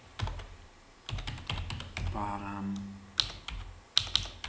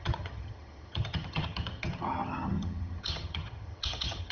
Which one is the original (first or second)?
first